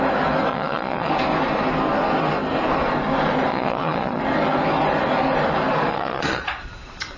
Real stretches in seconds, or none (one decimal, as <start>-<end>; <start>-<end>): 0.0-0.5; 1.1-3.5; 4.2-5.9; 6.5-7.2